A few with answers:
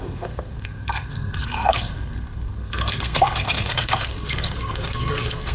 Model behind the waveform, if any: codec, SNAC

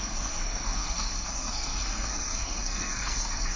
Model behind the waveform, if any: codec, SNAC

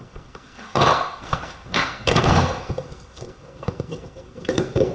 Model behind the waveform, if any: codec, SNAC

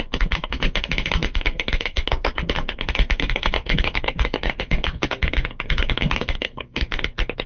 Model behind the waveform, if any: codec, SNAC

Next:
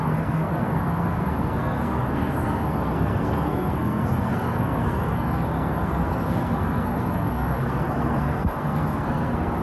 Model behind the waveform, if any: codec, SNAC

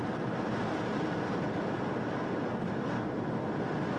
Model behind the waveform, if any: none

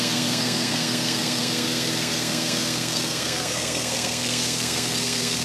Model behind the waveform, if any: codec, SNAC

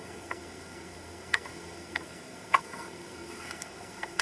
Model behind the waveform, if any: codec, SNAC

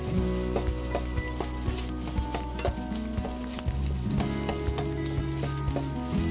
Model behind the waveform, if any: none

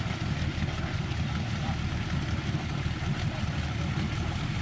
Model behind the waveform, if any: none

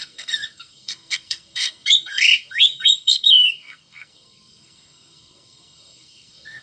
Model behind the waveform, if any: codec, SNAC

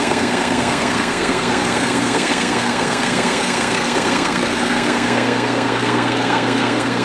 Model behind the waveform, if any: codec, SNAC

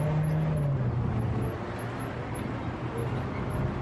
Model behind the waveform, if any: none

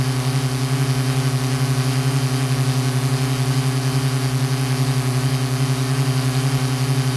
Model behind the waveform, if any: none